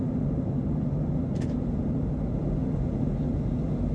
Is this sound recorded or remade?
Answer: recorded